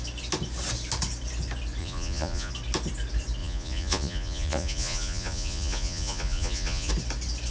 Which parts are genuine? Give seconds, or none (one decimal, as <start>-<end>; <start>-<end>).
0.0-1.8; 2.5-3.4; 6.9-7.5